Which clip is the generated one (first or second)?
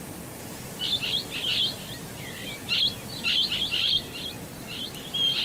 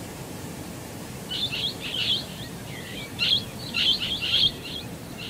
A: second